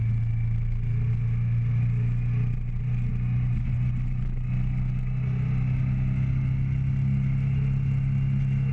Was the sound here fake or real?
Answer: real